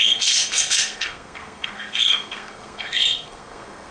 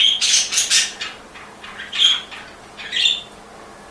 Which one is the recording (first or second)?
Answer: second